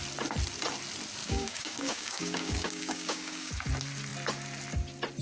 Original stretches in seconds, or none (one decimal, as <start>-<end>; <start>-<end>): 0.0-1.2; 3.5-5.2